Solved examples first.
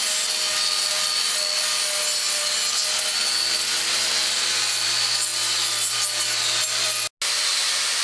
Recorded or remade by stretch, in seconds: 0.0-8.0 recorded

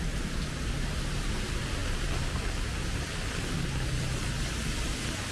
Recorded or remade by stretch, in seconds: 0.0-5.3 recorded

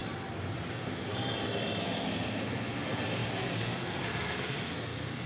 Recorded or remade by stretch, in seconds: 0.0-0.7 recorded; 0.7-1.1 remade; 1.1-1.8 recorded; 1.8-5.3 remade

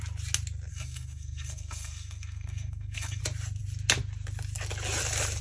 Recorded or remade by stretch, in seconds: 0.0-0.7 recorded; 0.7-3.2 remade; 3.2-5.4 recorded